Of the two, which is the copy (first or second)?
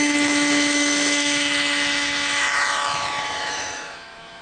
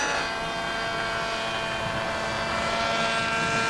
first